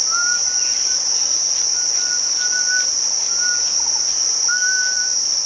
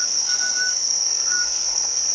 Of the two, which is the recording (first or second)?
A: first